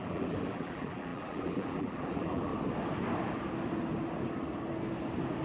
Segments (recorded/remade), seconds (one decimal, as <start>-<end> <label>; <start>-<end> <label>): 0.0-2.5 remade; 2.5-5.4 recorded